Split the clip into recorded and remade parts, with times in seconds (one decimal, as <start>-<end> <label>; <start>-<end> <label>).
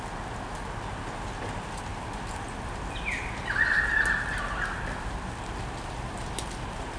0.0-7.0 recorded